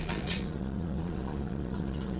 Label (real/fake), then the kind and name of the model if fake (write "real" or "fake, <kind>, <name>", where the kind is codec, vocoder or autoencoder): fake, vocoder, Vocos